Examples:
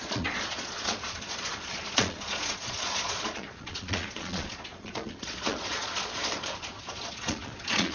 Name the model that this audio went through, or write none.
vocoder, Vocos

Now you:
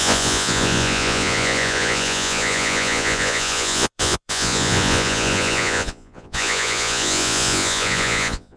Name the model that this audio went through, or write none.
vocoder, Vocos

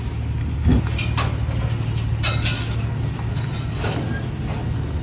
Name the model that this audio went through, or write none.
none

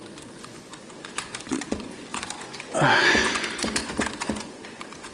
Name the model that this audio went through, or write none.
vocoder, Vocos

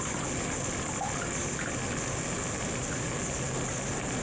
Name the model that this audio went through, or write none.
none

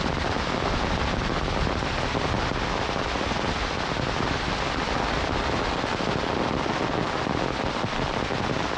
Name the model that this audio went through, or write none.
none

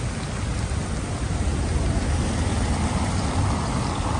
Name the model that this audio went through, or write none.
none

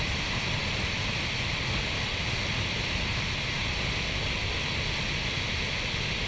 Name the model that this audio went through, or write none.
none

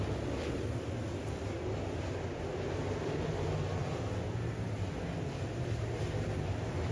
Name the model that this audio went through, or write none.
none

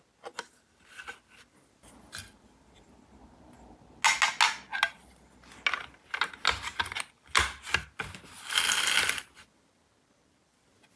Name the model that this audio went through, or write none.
none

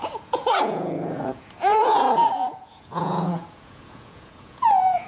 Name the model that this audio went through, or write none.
vocoder, Vocos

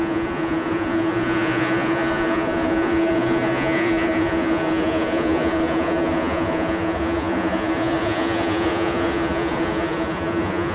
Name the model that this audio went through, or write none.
vocoder, Vocos